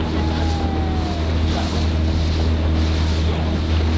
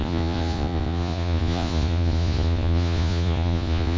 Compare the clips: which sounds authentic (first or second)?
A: first